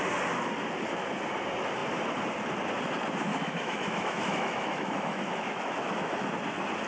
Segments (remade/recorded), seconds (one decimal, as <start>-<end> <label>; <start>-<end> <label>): 0.0-3.3 recorded; 3.3-6.3 remade; 6.3-6.9 recorded